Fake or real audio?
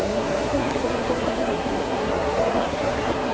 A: fake